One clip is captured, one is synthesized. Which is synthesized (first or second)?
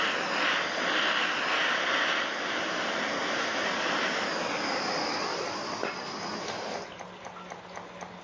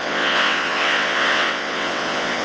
second